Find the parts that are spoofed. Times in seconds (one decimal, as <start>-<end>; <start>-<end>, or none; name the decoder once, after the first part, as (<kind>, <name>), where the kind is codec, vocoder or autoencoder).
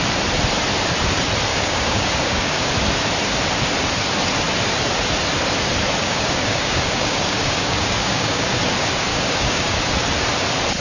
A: 1.5-2.7 (codec, DAC); 6.0-8.5; 9.1-9.8